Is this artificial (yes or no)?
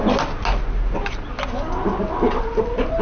no